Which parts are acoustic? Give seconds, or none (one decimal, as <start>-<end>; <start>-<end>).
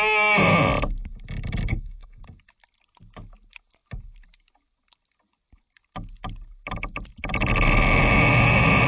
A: 0.0-1.7; 2.2-8.9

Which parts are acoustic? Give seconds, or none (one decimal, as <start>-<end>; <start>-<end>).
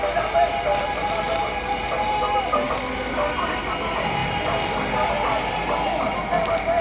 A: 0.0-6.8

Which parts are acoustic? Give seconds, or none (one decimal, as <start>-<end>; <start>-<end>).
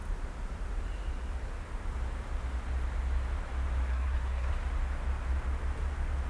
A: 0.0-3.9; 4.5-6.3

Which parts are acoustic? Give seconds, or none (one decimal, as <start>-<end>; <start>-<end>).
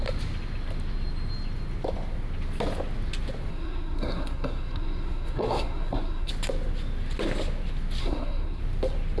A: 0.0-3.5; 6.3-8.0; 8.6-9.2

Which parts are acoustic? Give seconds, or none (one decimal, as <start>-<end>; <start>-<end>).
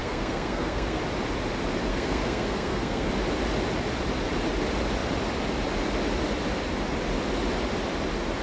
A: 1.0-1.9; 3.1-8.4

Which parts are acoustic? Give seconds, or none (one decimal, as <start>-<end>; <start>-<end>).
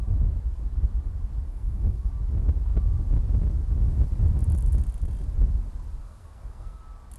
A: 0.0-1.5; 2.1-6.0; 6.8-7.2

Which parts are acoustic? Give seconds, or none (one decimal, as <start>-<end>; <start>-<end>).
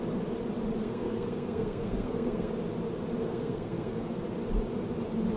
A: 0.0-0.8; 2.5-3.2; 4.2-5.4